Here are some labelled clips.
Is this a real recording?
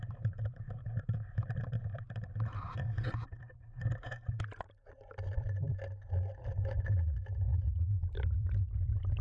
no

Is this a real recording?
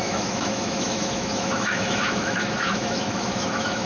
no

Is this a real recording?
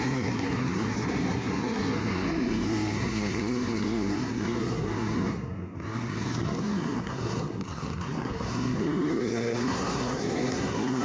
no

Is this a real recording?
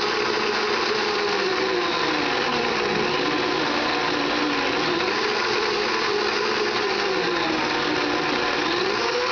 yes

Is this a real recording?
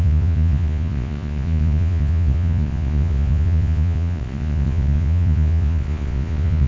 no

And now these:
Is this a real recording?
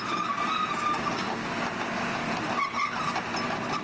yes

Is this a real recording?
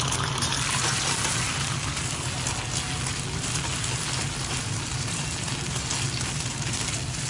yes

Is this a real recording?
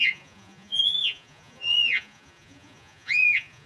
no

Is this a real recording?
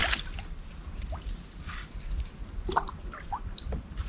no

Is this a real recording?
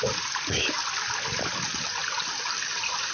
yes